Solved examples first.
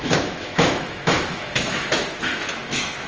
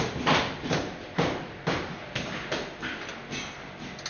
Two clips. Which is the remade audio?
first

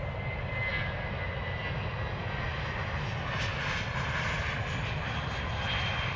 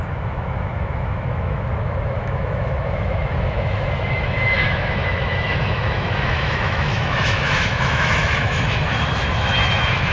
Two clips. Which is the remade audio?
second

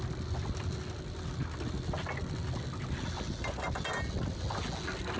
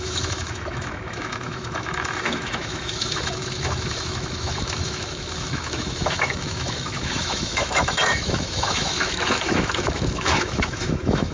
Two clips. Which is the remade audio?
second